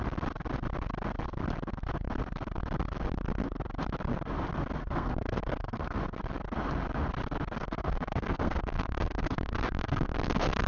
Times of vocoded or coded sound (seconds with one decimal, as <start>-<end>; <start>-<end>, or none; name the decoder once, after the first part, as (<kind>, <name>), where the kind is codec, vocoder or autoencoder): 4.8-6.0 (codec, SNAC); 7.6-10.7